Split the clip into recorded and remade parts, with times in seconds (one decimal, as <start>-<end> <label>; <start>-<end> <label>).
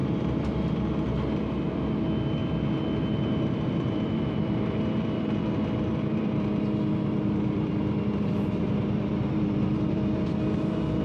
0.0-2.4 remade; 2.4-3.0 recorded; 3.0-11.0 remade